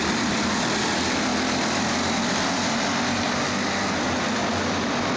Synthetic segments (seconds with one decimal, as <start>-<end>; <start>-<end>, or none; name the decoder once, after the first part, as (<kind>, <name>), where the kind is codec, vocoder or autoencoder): none